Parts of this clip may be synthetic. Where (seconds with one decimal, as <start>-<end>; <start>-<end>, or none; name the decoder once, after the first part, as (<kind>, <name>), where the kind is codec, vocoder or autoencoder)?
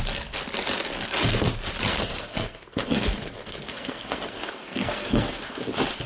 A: 1.9-5.6 (codec, SNAC)